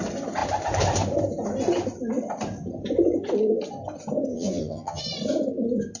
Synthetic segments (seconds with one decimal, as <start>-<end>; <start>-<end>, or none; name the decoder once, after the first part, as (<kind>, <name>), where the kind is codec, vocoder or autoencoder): 4.3-5.0 (vocoder, HiFi-GAN)

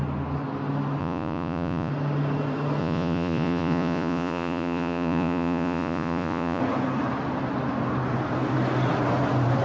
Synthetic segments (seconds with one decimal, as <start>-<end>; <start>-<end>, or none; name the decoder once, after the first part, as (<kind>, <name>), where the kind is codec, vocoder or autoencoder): 1.0-1.9 (vocoder, Vocos); 2.8-6.6

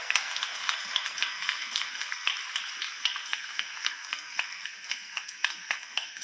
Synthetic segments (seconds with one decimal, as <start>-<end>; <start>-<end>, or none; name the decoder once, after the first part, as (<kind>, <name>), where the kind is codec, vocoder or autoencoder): 0.0-2.3 (codec, SNAC); 2.9-6.2

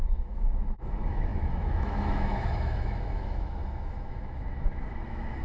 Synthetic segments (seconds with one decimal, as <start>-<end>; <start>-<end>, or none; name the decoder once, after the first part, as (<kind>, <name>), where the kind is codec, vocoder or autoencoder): 0.0-5.4 (autoencoder, DAC-VAE)